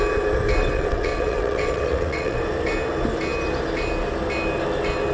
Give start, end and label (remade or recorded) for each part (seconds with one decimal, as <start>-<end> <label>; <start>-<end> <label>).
0.0-0.6 recorded; 0.6-2.4 remade; 2.4-5.1 recorded